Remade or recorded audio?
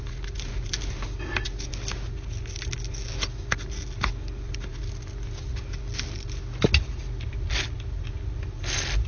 recorded